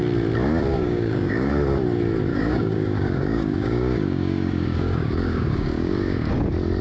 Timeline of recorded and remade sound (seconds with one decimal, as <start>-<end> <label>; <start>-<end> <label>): 0.0-0.7 recorded; 0.7-1.5 remade; 1.5-2.3 recorded; 2.3-6.3 remade; 6.3-6.8 recorded